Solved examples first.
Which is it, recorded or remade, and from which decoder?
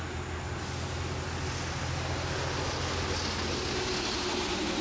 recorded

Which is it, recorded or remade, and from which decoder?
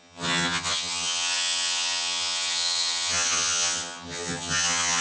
remade, vocoder, HiFi-GAN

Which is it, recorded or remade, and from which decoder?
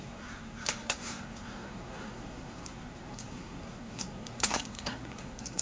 remade, codec, SNAC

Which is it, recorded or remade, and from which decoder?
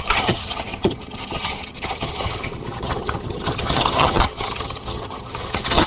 remade, vocoder, HiFi-GAN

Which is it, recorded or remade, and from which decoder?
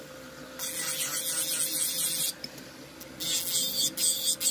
recorded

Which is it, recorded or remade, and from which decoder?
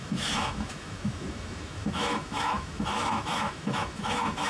remade, autoencoder, DAC-VAE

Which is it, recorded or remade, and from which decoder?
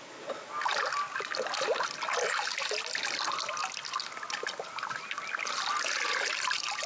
recorded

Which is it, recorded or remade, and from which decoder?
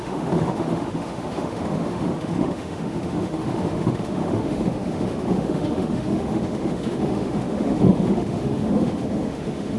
remade, autoencoder, DAC-VAE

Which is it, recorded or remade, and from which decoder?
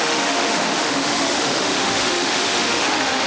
remade, autoencoder, DAC-VAE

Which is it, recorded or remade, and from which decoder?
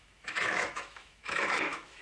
remade, autoencoder, DAC-VAE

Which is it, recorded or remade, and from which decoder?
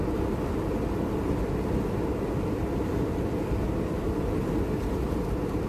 recorded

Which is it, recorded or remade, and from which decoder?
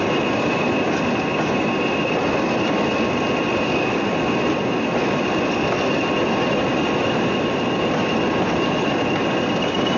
recorded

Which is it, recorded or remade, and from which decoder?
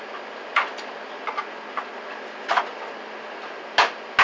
recorded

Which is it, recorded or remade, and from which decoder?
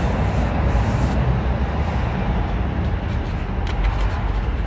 recorded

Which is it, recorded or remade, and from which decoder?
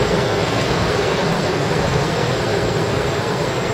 remade, codec, SNAC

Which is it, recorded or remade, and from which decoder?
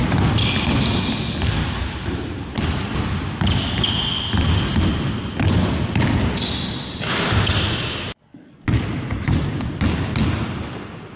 recorded